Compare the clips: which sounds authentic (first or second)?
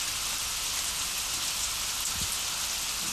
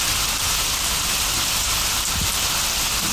first